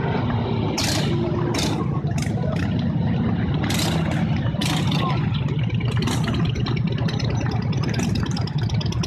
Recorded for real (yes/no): yes